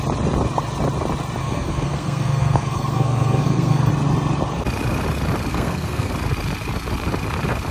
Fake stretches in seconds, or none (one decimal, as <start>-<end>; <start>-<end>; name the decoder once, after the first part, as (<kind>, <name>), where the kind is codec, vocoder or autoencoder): 1.4-3.9 (codec, SNAC); 5.5-6.1